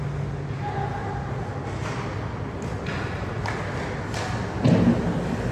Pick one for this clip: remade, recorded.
recorded